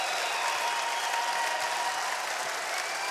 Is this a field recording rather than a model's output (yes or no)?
yes